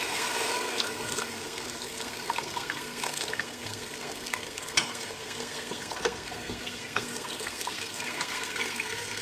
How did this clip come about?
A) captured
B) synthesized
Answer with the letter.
B